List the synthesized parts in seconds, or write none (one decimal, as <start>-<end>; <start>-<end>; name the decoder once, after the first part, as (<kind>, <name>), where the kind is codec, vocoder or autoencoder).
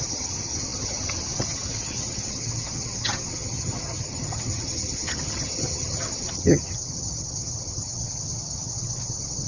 0.0-9.5 (vocoder, HiFi-GAN)